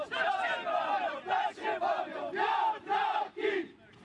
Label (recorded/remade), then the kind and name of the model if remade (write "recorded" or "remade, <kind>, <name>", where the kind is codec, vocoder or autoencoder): recorded